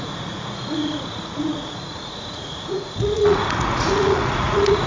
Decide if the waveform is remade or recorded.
remade